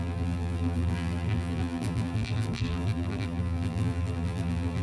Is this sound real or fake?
fake